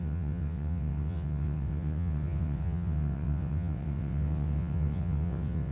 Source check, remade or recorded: remade